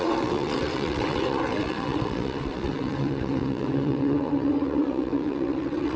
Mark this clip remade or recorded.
remade